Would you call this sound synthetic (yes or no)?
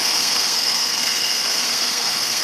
yes